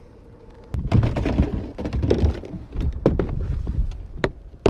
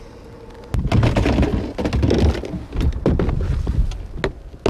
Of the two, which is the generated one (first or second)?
first